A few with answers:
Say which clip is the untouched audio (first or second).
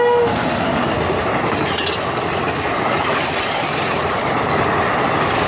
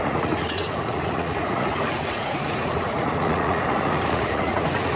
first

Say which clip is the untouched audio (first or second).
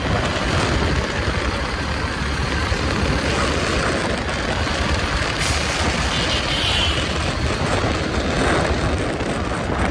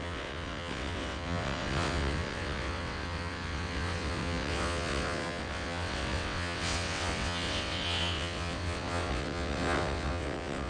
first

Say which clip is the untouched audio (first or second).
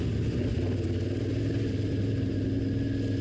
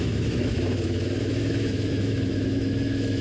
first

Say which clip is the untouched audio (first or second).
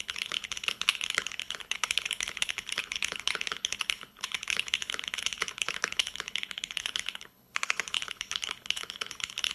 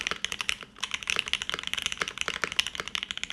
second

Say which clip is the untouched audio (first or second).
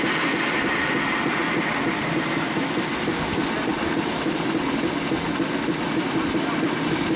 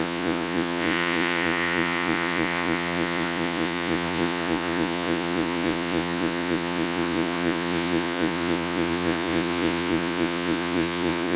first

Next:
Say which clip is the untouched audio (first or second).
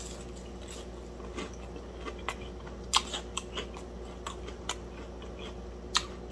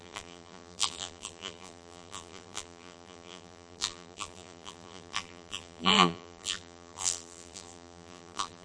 first